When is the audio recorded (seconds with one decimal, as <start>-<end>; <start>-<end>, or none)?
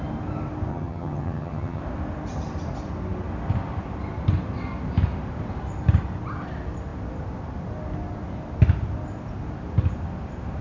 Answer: 0.0-0.7; 1.8-10.6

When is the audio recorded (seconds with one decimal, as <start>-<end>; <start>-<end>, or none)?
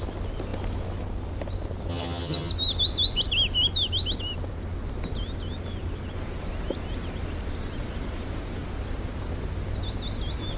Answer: 0.0-1.9; 2.5-10.6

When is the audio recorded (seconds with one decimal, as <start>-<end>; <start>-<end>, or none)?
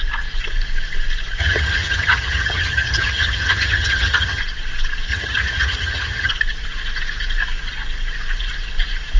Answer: 0.0-1.4; 4.4-5.1; 6.3-9.2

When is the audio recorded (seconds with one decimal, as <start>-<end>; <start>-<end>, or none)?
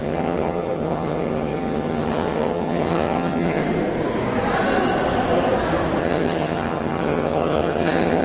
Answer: 3.6-6.0